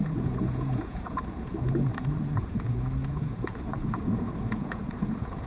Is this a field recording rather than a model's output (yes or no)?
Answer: no